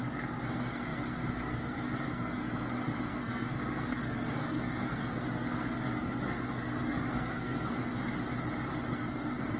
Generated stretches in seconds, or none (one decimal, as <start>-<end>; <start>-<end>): 0.0-8.1; 8.9-9.6